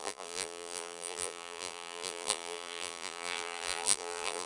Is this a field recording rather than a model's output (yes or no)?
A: no